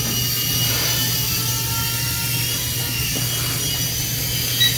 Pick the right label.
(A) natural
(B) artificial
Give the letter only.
A